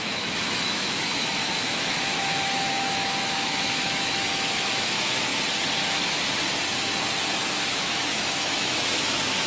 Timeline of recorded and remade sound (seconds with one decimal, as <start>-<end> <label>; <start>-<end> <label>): 0.0-5.3 remade; 5.3-7.5 recorded; 7.5-9.5 remade